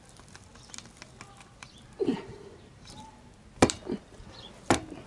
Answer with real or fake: real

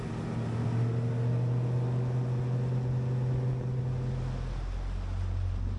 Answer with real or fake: real